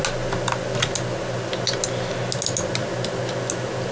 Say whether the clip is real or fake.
real